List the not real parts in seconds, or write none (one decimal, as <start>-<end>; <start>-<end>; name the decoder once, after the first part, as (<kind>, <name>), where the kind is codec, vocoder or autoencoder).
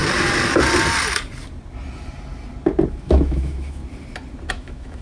3.0-3.8 (autoencoder, DAC-VAE); 4.5-5.0